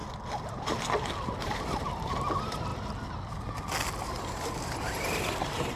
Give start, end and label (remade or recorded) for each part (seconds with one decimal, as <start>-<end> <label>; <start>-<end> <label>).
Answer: 0.0-1.4 recorded; 1.4-2.7 remade; 2.7-4.9 recorded; 4.9-5.8 remade